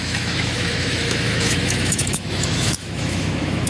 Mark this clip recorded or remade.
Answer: remade